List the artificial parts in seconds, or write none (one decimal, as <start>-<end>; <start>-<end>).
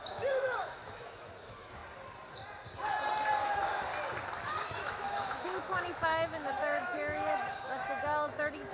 0.0-1.8; 3.4-3.9; 4.4-8.7